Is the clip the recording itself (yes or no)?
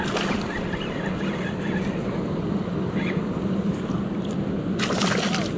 yes